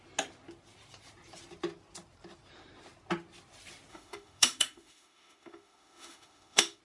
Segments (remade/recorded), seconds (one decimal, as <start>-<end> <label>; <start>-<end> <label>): 0.0-3.9 recorded; 3.9-6.8 remade